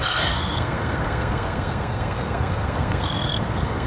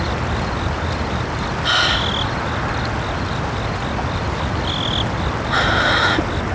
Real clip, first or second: second